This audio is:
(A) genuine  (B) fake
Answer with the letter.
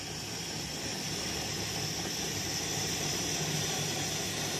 B